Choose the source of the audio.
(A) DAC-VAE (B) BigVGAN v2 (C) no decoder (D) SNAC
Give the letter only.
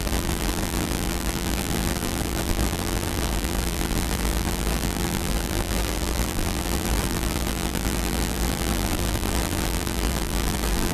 B